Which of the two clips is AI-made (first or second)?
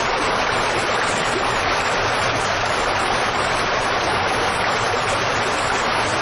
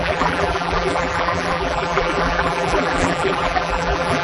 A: second